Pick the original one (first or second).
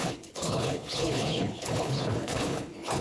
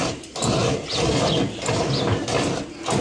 second